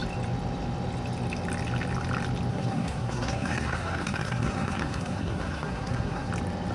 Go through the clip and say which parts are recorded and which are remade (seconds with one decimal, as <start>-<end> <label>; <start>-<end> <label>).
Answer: 0.0-2.5 recorded; 2.5-6.3 remade; 6.3-6.7 recorded